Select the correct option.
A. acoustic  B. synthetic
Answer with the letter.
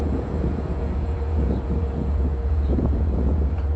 B